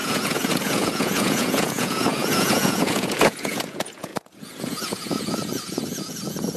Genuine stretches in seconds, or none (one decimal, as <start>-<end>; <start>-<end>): none